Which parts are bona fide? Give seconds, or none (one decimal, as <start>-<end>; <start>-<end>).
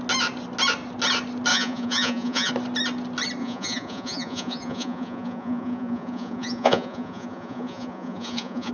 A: 0.0-1.5; 2.5-3.4